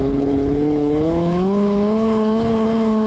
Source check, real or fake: fake